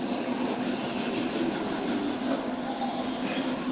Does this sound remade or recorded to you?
recorded